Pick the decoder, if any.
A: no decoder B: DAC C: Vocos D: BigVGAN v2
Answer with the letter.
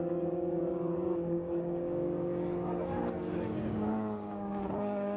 B